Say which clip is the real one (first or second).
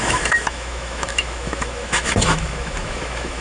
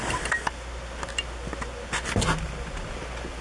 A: second